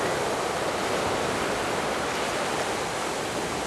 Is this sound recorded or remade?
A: recorded